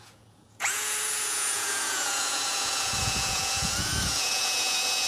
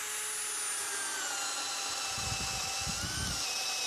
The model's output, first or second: first